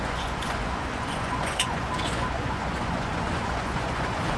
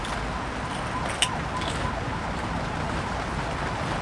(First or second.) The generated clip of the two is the first